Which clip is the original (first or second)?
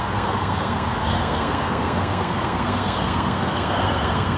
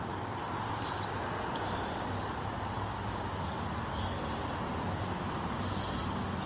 second